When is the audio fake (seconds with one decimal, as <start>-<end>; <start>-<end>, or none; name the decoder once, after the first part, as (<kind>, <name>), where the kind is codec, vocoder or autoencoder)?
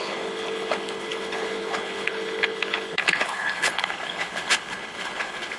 0.0-5.6 (codec, HILCodec)